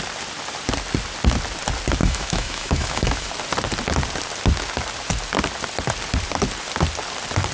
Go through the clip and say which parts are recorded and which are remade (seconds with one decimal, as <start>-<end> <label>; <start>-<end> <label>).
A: 0.0-2.0 recorded; 2.0-3.3 remade; 3.3-7.5 recorded